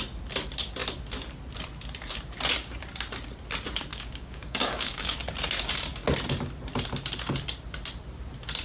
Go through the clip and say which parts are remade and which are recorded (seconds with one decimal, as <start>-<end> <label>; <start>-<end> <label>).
0.0-3.9 recorded; 3.9-5.2 remade; 5.2-8.6 recorded